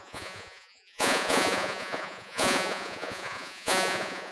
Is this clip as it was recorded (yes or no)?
no